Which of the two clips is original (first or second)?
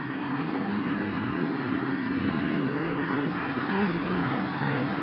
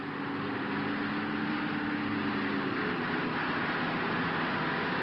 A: second